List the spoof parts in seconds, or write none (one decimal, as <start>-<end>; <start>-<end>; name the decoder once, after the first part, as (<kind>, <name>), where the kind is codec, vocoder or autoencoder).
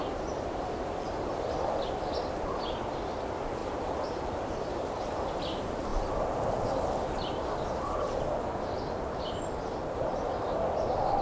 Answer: 0.0-1.3 (vocoder, BigVGAN v2); 3.6-4.7